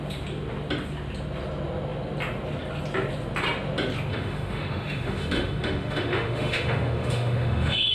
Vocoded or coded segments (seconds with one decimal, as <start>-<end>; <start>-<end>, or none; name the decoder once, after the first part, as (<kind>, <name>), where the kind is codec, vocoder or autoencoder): 4.1-7.9 (autoencoder, DAC-VAE)